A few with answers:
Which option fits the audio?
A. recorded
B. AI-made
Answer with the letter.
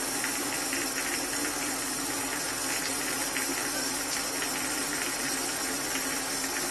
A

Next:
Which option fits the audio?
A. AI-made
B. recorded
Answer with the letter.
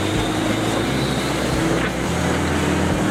B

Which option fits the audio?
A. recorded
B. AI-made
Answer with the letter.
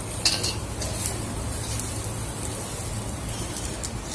A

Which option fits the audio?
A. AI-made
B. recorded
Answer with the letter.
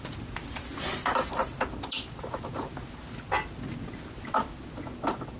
B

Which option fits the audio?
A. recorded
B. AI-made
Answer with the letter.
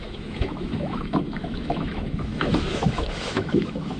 B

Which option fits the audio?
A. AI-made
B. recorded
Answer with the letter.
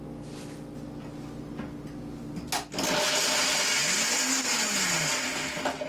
B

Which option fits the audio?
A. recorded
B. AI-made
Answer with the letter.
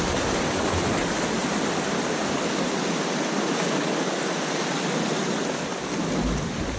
A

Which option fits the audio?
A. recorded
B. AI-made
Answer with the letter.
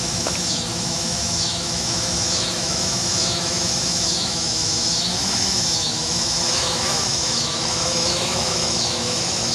B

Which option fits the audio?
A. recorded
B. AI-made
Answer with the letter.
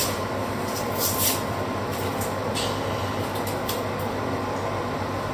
A